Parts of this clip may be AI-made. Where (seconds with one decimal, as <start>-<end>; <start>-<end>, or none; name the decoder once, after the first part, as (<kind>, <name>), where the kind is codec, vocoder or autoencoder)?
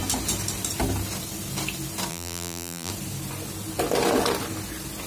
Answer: 2.1-2.9 (vocoder, BigVGAN v2)